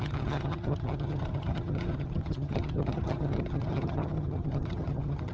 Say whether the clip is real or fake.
fake